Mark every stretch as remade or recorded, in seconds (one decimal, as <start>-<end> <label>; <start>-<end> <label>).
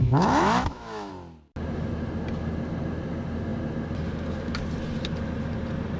0.0-1.1 remade; 1.1-6.0 recorded